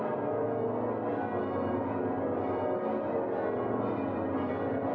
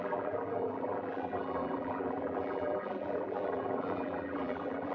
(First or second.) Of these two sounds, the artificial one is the second